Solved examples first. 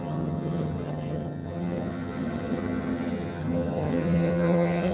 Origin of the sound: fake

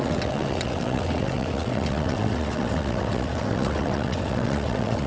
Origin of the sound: fake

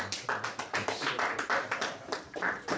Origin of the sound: fake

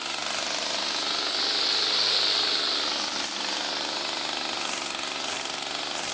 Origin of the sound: real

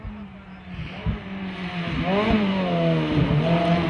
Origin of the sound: real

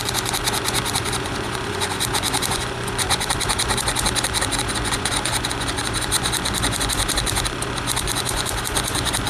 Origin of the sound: fake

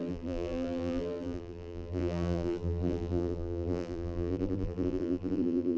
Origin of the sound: fake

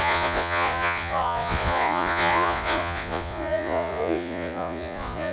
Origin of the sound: fake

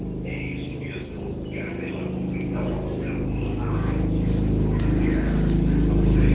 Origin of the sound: real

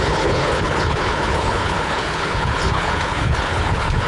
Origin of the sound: fake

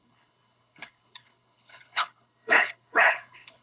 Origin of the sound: fake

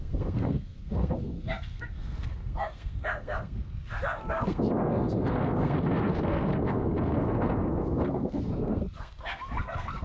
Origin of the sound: fake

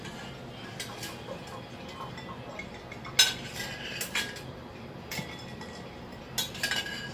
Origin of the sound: real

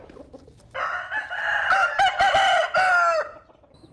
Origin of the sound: real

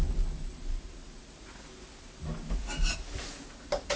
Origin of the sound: real